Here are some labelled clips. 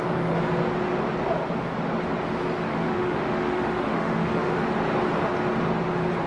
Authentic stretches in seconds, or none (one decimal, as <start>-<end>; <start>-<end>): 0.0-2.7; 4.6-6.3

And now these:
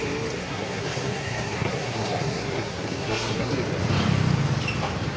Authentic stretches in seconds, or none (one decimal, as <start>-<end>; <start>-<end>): 0.0-0.4; 3.5-5.2

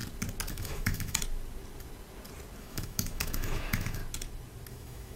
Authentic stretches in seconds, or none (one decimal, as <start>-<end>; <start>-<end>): 0.0-0.5; 1.2-2.6; 4.0-4.7

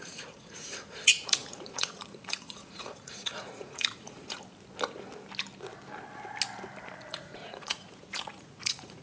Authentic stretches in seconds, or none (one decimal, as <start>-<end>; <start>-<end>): 4.4-7.1

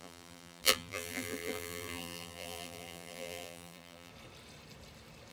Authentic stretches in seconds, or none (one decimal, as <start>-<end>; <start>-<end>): 4.1-5.3

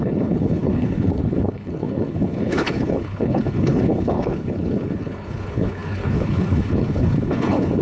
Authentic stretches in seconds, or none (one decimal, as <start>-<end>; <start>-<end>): none

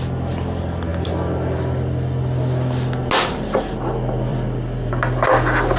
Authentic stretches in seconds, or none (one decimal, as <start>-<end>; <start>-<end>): 0.0-4.3; 4.9-5.8

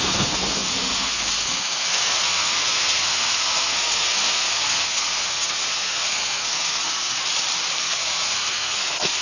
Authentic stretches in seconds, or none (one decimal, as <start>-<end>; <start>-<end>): 7.2-7.8